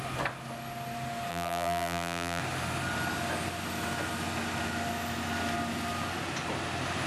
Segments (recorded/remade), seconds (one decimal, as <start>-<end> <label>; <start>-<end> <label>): 0.0-1.3 recorded; 1.3-2.4 remade; 2.4-7.1 recorded